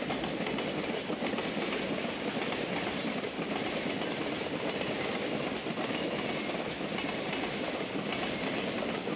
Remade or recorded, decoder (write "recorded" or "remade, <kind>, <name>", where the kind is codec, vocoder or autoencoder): recorded